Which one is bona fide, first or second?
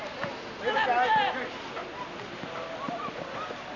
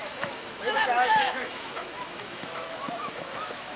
first